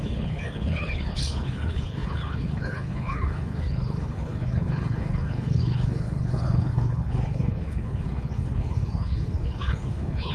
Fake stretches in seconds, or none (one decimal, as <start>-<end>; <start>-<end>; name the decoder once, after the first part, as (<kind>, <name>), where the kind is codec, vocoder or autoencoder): 0.0-10.3 (codec, HILCodec)